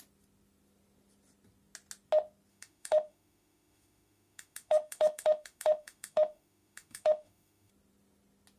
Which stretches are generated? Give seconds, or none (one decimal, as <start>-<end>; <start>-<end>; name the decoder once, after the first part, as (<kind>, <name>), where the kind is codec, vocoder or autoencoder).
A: 2.5-7.7 (autoencoder, DAC-VAE)